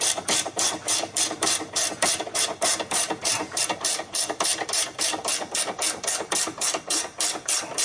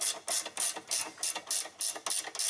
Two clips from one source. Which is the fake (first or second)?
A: first